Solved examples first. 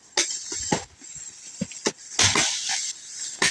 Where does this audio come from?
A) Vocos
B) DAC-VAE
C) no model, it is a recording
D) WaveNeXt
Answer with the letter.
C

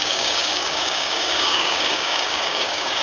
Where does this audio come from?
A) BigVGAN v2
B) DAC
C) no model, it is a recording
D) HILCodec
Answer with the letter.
B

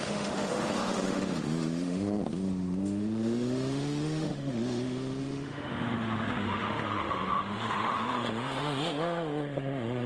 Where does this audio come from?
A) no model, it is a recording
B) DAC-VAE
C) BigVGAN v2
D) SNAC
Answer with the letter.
B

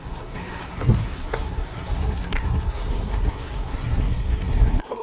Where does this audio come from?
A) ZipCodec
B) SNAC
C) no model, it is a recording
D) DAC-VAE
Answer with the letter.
B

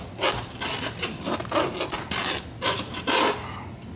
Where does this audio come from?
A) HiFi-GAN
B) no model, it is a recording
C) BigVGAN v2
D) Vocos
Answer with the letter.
B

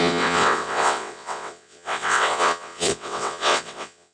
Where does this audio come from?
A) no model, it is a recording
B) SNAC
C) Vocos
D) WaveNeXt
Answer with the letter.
D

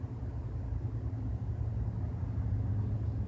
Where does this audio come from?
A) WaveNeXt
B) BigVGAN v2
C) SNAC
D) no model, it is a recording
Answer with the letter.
D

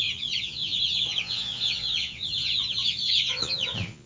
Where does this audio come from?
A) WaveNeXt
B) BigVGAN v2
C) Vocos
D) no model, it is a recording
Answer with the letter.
C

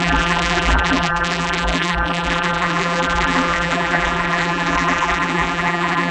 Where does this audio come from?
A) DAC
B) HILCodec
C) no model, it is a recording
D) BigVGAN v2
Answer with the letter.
D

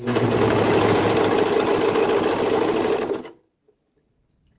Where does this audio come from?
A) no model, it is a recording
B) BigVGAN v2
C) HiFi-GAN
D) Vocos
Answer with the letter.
A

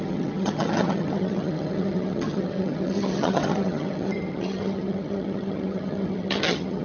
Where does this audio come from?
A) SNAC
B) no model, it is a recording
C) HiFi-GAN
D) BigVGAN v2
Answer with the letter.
C